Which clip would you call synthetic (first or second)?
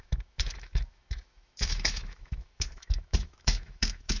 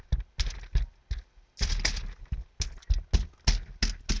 first